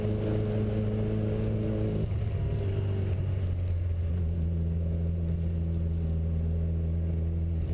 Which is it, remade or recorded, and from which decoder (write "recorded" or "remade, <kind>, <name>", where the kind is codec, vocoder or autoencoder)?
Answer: recorded